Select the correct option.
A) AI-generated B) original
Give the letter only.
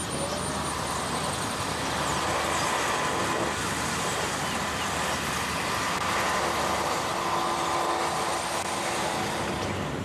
B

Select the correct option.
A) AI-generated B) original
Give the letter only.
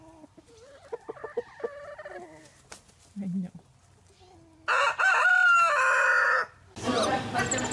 B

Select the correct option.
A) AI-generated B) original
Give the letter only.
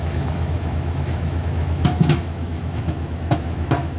A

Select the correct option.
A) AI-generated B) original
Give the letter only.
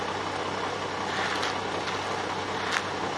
B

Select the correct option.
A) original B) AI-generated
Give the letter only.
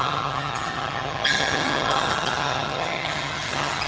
B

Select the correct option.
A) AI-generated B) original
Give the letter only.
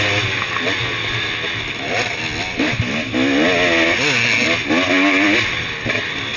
B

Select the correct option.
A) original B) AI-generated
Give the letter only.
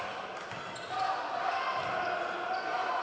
A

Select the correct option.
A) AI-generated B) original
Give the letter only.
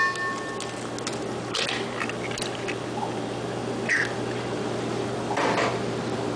B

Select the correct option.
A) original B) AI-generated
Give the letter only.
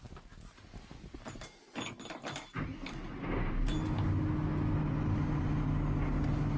A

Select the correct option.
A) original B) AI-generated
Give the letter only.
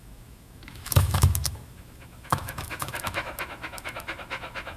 B